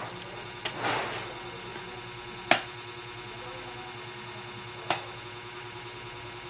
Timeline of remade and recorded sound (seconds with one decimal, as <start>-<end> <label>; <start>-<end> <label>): 0.0-6.5 recorded